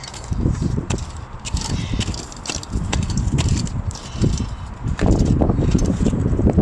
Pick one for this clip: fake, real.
fake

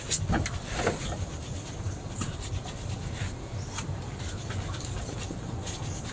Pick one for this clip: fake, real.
real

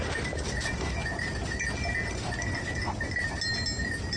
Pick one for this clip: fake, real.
real